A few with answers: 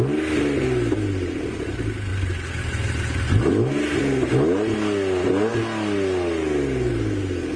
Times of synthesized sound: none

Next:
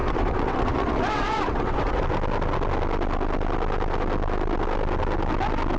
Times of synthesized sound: 0.0-2.0 (vocoder, WaveNeXt)

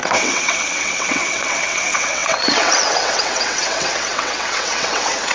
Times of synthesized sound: 0.0-5.3 (vocoder, WaveNeXt)

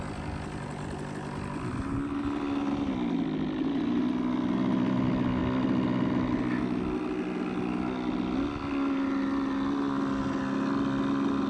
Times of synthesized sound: none

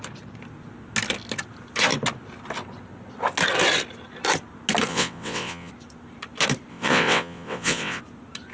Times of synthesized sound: 4.9-5.7 (vocoder, WaveNeXt); 6.7-8.0

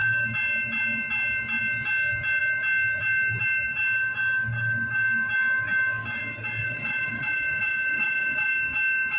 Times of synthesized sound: 6.6-8.5 (vocoder, WaveNeXt)